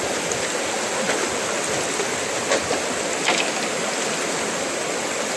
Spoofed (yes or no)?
no